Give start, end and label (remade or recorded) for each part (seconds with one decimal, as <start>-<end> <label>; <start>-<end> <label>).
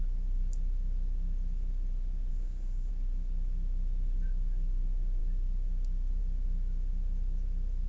0.0-2.3 recorded; 2.3-2.9 remade; 2.9-7.9 recorded